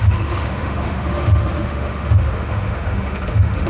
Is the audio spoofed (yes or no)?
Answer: yes